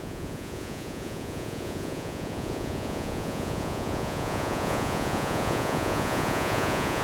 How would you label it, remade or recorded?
remade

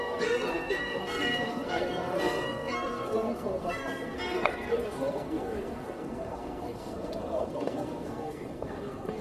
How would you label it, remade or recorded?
remade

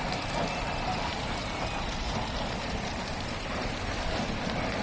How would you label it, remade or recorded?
remade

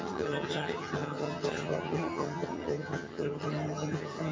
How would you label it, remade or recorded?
remade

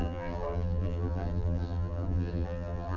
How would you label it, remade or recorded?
remade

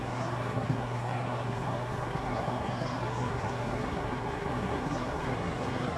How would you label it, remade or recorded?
remade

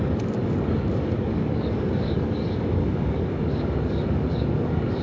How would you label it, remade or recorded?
remade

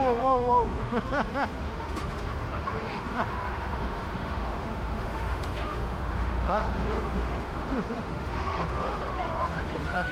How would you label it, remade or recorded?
remade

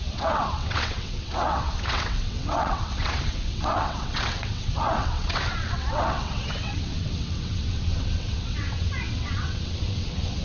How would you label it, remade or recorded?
remade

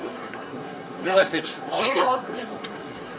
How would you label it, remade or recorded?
remade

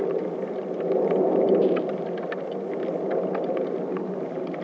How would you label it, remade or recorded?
recorded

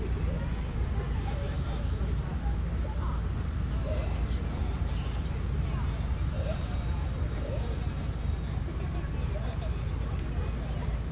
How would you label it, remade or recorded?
recorded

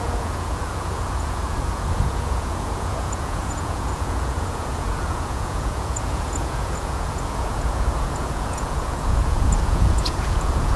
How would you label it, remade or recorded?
remade